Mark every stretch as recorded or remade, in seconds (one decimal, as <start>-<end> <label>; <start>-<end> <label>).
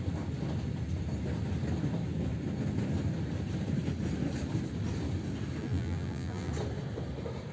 0.0-5.6 recorded; 5.6-6.5 remade; 6.5-7.5 recorded